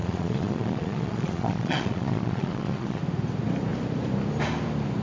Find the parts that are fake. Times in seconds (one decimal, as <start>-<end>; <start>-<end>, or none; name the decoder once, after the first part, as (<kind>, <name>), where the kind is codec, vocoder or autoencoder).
0.0-3.0 (vocoder, Vocos)